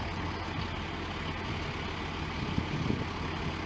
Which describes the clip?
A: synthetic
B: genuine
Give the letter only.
B